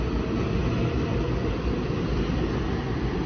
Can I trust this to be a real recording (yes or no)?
yes